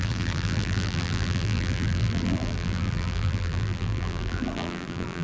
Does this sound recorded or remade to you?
remade